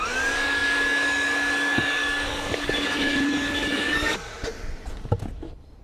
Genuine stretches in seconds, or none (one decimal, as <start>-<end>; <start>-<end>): 4.3-5.8

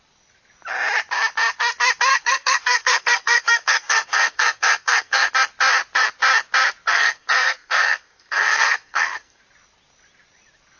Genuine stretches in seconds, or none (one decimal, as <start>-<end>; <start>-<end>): 0.0-2.1; 5.3-6.9; 9.4-10.8

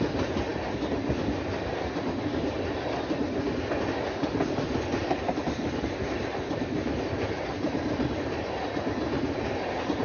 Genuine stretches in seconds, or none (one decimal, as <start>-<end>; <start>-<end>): 0.0-5.0; 8.4-10.0

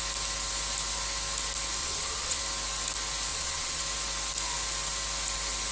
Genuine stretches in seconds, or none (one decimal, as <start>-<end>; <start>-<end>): 0.0-1.8; 2.4-3.3; 3.8-5.7